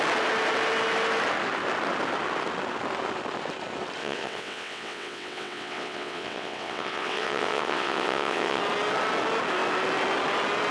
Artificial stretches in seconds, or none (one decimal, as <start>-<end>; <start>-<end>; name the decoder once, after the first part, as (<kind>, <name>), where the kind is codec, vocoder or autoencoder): 4.0-8.6 (vocoder, WaveNeXt)